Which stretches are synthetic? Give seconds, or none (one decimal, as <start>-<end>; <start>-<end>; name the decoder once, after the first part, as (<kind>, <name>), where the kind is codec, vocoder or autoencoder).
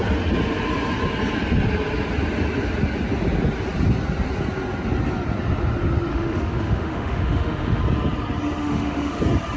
6.1-7.8 (autoencoder, DAC-VAE); 8.6-9.2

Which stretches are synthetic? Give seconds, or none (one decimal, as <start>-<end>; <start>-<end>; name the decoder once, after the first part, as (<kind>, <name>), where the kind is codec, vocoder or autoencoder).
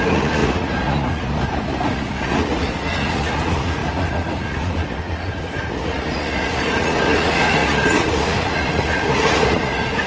0.0-10.1 (vocoder, Vocos)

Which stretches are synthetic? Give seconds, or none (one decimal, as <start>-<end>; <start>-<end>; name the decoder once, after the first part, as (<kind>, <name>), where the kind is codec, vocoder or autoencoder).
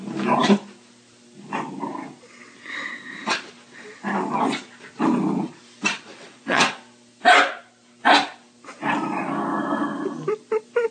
6.1-6.8 (vocoder, WaveNeXt)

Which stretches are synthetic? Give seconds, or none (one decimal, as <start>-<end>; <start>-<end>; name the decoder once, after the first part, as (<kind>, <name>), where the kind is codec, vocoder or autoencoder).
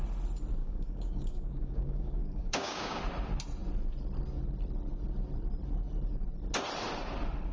0.6-3.0 (codec, DAC)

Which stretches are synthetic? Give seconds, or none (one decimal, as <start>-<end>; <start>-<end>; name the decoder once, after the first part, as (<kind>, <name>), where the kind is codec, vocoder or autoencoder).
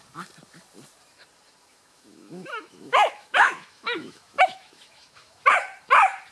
1.7-5.5 (autoencoder, DAC-VAE)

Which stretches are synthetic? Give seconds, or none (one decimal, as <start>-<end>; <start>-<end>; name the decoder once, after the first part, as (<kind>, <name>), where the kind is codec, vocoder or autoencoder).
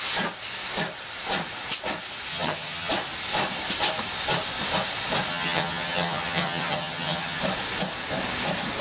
2.3-2.9 (vocoder, HiFi-GAN); 5.3-7.4